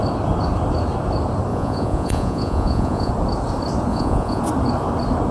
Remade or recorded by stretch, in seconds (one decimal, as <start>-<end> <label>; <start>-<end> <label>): 0.0-1.5 recorded; 1.5-3.1 remade; 3.1-3.9 recorded; 3.9-4.4 remade; 4.4-5.3 recorded

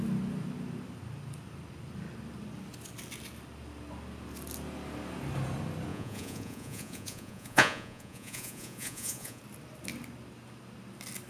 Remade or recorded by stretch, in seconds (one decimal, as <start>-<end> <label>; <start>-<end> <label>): 0.0-5.9 recorded; 5.9-9.4 remade; 9.4-11.3 recorded

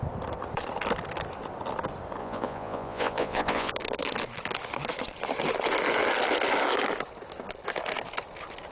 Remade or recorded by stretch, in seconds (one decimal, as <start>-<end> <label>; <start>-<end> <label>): 0.0-2.2 recorded; 2.2-3.7 remade; 3.7-8.7 recorded

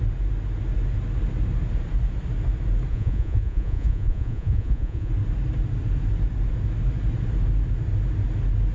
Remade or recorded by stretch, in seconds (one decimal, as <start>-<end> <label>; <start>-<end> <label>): 0.0-2.9 recorded; 2.9-5.1 remade; 5.1-8.7 recorded

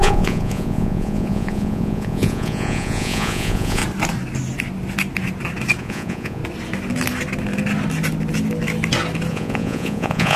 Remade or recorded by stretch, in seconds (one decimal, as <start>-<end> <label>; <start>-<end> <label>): 0.0-3.8 remade; 3.8-5.8 recorded; 5.8-6.4 remade; 6.4-9.3 recorded; 9.3-10.4 remade

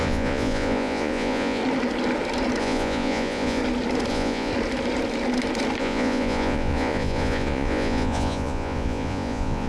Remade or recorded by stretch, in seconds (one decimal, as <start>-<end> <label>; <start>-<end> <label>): 0.0-1.6 remade; 1.6-2.6 recorded; 2.6-3.6 remade; 3.6-4.1 recorded; 4.1-4.5 remade; 4.5-5.8 recorded; 5.8-9.7 remade